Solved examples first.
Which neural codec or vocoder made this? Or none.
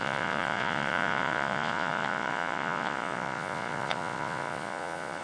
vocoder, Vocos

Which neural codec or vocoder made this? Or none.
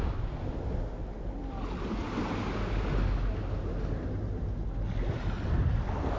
none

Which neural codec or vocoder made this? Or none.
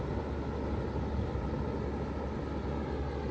none